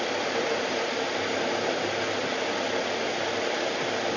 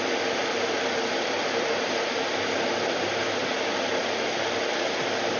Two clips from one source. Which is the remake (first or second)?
first